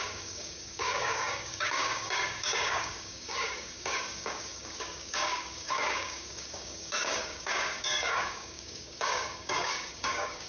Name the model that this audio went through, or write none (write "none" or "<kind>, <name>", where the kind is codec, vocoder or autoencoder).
codec, DAC